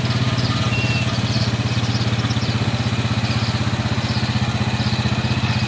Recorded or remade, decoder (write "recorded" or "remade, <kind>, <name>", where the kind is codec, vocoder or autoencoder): recorded